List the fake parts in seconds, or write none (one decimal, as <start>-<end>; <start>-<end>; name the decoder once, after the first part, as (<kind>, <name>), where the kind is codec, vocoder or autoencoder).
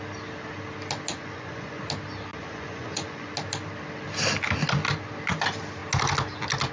1.1-1.8 (vocoder, Vocos); 2.4-3.3